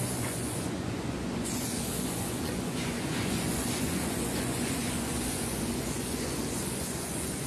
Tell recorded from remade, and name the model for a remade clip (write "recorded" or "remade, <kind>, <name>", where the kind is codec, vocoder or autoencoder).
remade, vocoder, Vocos